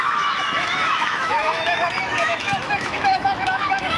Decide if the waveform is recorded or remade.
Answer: remade